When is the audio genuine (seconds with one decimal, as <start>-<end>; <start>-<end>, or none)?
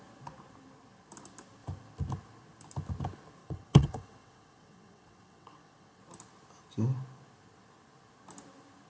0.0-3.4; 6.0-8.9